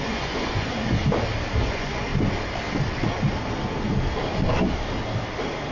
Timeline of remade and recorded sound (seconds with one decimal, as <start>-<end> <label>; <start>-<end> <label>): 0.0-1.0 remade; 1.0-1.6 recorded; 1.6-2.1 remade; 2.1-5.7 recorded